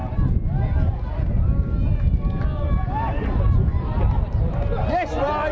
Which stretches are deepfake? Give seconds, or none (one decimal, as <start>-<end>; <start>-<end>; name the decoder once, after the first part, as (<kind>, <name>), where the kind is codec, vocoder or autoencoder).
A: none